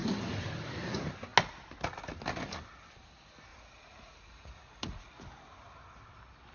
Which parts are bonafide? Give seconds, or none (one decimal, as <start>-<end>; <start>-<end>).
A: 0.0-3.5; 5.1-6.5